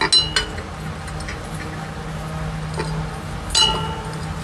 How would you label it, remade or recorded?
recorded